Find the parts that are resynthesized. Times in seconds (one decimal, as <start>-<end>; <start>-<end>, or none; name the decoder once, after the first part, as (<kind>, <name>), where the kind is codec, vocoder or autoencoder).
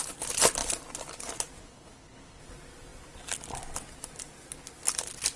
1.6-2.4 (codec, HILCodec)